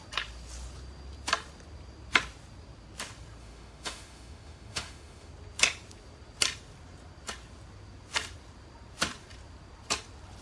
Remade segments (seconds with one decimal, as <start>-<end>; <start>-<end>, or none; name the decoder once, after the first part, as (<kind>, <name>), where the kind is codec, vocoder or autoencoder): 3.4-5.3 (autoencoder, DAC-VAE)